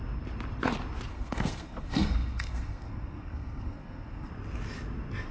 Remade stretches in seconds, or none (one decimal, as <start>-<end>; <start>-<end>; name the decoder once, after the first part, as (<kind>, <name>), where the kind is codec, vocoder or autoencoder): 1.1-4.3 (codec, SNAC)